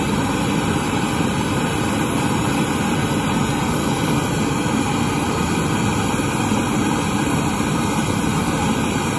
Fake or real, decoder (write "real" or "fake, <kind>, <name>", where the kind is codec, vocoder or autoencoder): real